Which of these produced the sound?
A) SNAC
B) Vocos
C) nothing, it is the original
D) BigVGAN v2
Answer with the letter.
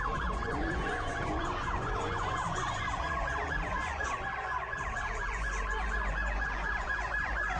B